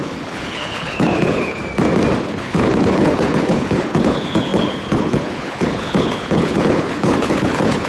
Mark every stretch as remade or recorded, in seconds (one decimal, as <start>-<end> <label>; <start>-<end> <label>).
0.0-1.6 remade; 1.6-2.2 recorded; 2.2-7.9 remade